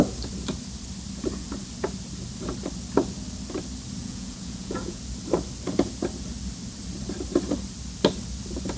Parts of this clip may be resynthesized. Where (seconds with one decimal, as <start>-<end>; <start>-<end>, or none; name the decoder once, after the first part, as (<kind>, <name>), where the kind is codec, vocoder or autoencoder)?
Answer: 4.0-5.0 (vocoder, Vocos)